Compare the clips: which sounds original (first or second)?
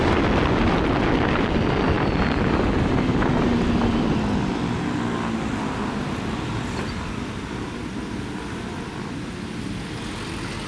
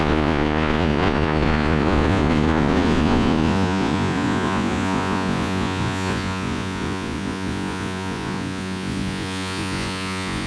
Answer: first